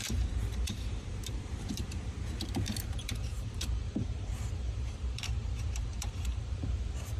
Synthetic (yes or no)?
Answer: yes